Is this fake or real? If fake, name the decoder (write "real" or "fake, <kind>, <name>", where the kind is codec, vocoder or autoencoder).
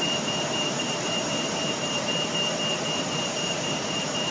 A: fake, vocoder, BigVGAN v2